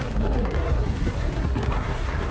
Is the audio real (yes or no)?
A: no